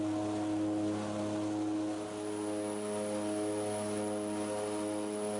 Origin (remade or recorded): recorded